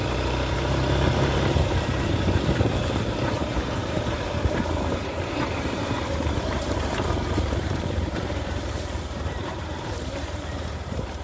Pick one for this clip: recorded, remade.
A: remade